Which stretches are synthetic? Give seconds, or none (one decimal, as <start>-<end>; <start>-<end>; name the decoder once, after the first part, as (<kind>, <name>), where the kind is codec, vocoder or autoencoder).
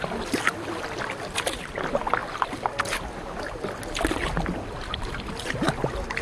none